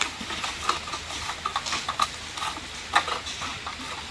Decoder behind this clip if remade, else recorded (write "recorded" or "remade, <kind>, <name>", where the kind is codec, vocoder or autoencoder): recorded